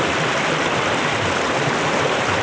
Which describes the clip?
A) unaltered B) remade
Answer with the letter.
A